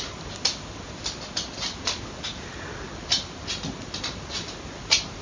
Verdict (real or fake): real